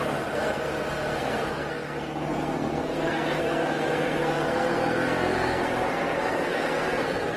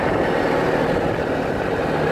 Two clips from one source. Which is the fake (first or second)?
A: first